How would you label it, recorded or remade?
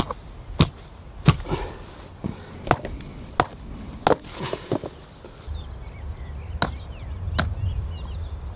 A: recorded